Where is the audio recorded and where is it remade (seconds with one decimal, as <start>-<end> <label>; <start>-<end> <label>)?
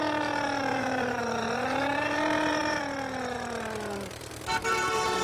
0.0-0.7 recorded; 0.7-2.8 remade; 2.8-4.5 recorded; 4.5-5.2 remade